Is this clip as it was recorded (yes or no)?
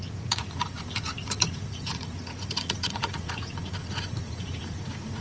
no